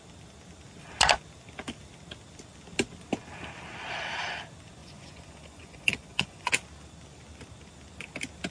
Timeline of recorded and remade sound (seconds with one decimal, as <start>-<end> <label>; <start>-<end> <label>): 0.0-4.8 recorded; 4.8-6.5 remade; 6.5-8.5 recorded